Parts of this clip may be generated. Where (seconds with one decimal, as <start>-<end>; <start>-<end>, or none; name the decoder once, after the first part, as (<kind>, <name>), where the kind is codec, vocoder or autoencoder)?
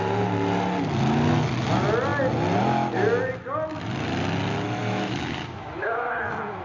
4.8-6.1 (autoencoder, DAC-VAE)